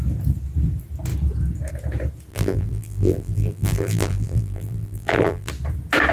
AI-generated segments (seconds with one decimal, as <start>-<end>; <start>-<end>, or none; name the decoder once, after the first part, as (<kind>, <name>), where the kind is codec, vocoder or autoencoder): 2.3-5.5 (vocoder, BigVGAN v2)